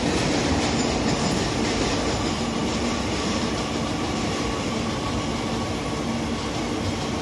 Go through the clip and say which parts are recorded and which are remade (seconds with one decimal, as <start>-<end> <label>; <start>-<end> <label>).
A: 0.0-7.2 recorded